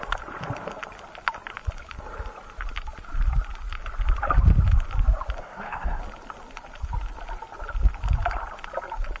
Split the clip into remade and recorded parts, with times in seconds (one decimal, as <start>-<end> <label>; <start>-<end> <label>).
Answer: 0.0-5.4 recorded; 5.4-6.0 remade; 6.0-9.2 recorded